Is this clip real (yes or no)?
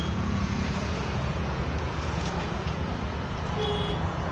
no